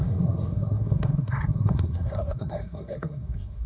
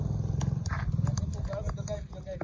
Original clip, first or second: second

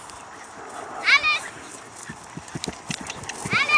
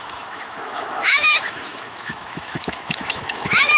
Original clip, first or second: first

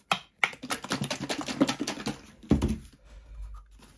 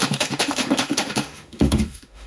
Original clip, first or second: first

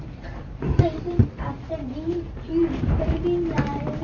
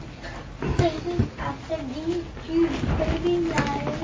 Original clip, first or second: second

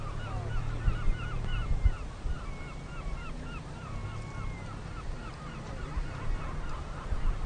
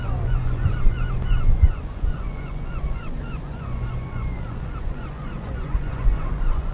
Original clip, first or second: first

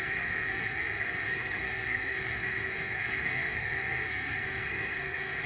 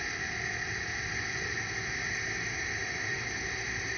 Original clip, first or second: second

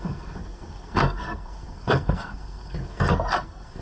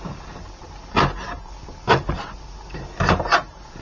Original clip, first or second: second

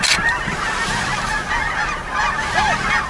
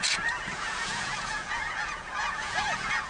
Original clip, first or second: first